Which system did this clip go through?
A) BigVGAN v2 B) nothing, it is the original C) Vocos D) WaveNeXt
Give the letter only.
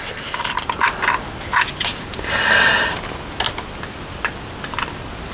B